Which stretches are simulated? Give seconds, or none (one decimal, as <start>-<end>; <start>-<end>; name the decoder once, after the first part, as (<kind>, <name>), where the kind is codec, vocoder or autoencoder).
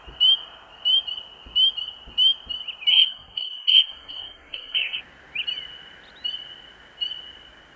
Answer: 2.9-5.0 (codec, SNAC)